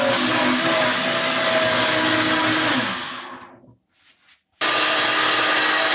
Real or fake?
real